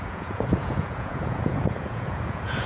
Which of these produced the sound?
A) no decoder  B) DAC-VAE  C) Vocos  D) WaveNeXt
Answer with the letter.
C